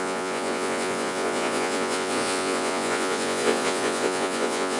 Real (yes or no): no